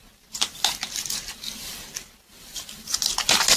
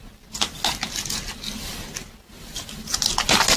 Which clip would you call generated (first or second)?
first